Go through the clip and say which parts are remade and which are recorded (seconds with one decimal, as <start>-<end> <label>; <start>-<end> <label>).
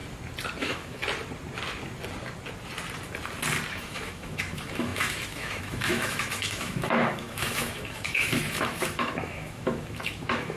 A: 0.0-0.6 recorded; 0.6-1.0 remade; 1.0-3.7 recorded; 3.7-10.6 remade